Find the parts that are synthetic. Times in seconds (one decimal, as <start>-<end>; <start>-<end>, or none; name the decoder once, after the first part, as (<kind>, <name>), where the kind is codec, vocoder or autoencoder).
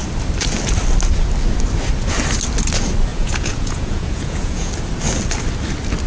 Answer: 3.1-4.7 (vocoder, Vocos)